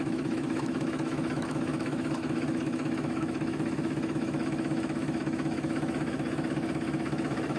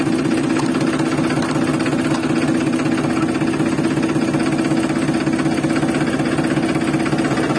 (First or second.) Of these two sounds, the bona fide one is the second